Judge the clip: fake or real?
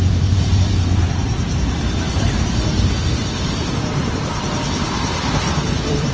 fake